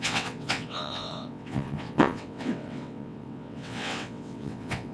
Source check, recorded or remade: remade